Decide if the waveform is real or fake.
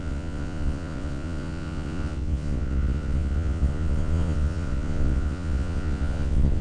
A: fake